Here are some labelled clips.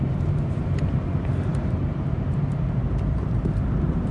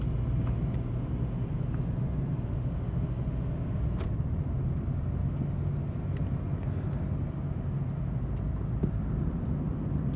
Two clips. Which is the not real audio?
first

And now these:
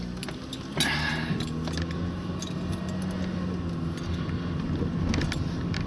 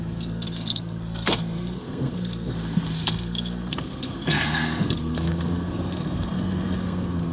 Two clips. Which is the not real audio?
second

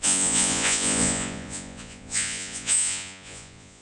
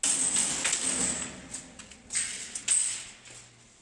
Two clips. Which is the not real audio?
first